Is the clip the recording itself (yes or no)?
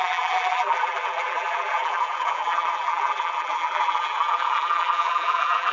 no